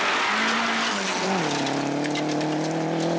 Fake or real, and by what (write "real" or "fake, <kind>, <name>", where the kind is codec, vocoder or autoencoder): real